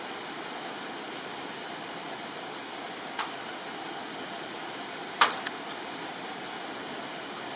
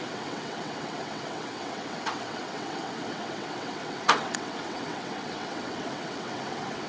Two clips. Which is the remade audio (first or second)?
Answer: second